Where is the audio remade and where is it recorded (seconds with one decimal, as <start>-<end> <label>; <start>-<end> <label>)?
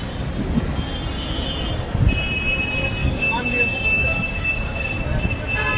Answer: 0.0-3.0 recorded; 3.0-4.9 remade; 4.9-5.8 recorded